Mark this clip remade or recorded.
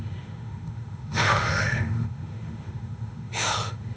remade